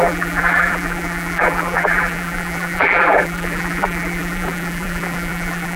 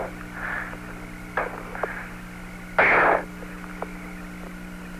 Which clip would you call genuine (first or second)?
second